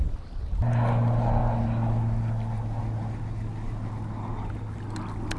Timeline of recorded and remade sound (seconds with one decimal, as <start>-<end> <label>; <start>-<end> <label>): 0.0-5.4 recorded